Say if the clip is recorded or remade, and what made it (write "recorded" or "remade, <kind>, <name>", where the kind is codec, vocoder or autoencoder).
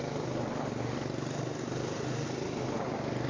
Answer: recorded